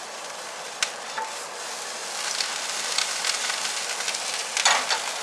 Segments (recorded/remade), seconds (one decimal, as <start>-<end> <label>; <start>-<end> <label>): 0.0-5.2 recorded